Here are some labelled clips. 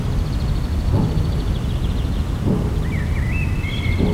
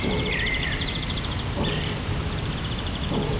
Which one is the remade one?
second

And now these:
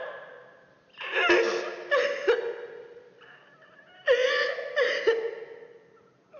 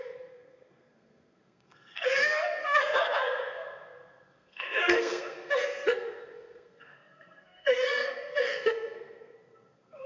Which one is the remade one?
second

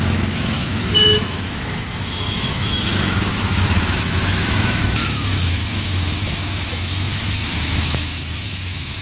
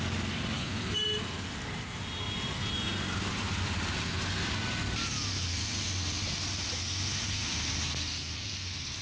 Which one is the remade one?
first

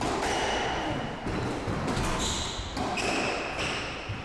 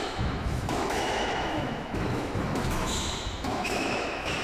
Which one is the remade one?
second